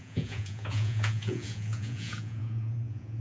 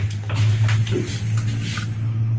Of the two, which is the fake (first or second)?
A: first